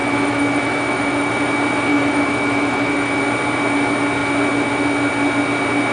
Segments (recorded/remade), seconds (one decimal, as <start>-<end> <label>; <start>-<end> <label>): 0.0-1.3 remade; 1.3-1.9 recorded; 1.9-3.2 remade; 3.2-5.9 recorded